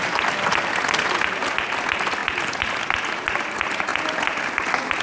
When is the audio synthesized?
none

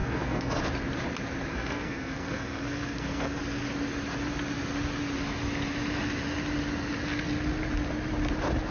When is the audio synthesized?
0.0-0.6 (codec, SNAC); 1.5-3.4

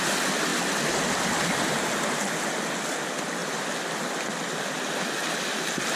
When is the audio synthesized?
none

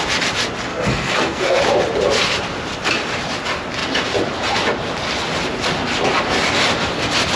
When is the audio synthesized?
0.7-1.6 (codec, SNAC)